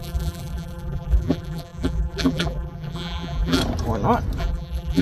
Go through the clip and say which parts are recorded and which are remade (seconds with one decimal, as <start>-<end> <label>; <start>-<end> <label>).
0.0-3.6 remade; 3.6-4.4 recorded; 4.4-5.0 remade